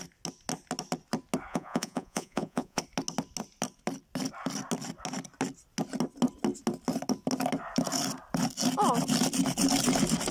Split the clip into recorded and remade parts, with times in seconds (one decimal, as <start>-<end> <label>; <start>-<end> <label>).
0.0-1.5 recorded; 1.5-2.8 remade; 2.8-10.3 recorded